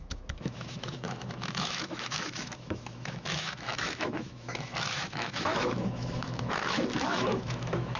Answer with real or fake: fake